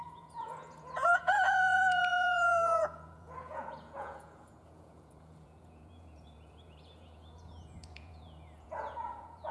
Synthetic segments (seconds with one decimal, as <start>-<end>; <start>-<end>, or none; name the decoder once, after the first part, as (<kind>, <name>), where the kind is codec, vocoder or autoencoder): 0.0-9.5 (vocoder, Vocos)